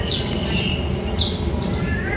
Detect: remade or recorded recorded